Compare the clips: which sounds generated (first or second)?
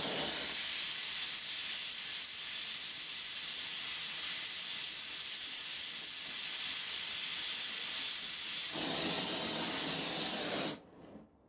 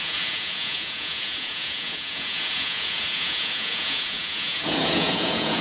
second